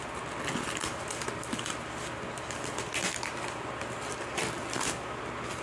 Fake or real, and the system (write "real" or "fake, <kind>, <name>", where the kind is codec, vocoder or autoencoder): real